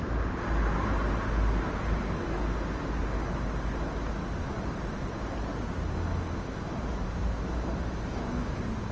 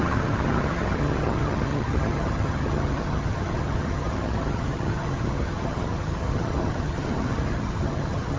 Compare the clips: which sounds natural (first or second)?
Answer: first